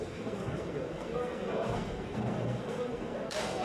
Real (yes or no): no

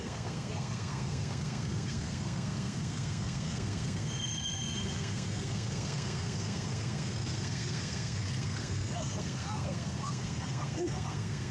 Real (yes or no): no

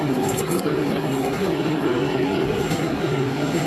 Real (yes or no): no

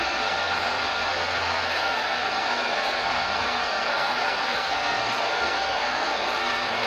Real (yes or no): no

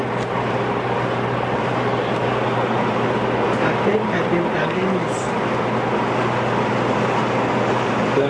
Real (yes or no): yes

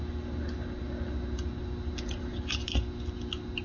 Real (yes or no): yes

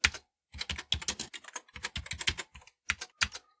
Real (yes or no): yes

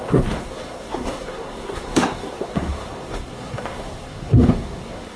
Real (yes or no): no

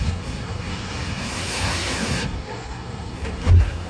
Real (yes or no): no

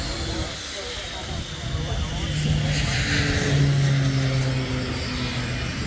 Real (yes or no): yes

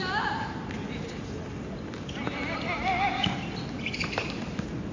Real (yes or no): yes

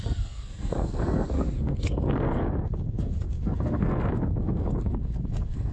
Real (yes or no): no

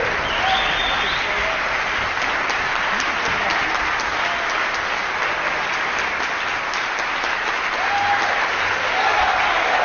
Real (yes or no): yes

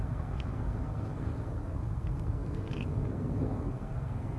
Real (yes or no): no